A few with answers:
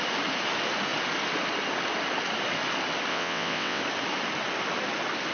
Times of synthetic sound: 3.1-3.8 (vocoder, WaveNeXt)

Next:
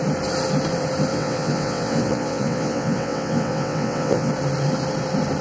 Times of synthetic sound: 1.1-4.3 (vocoder, WaveNeXt)

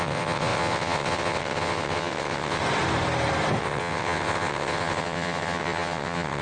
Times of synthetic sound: 0.0-2.6 (vocoder, WaveNeXt); 3.6-6.4